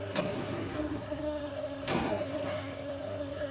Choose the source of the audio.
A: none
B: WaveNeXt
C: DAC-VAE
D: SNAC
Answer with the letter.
D